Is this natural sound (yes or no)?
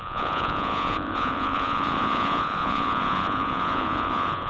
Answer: no